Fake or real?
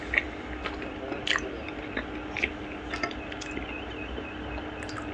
real